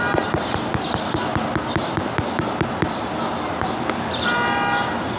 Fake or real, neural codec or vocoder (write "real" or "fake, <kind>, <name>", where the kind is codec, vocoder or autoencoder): real